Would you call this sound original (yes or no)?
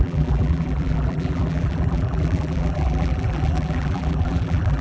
no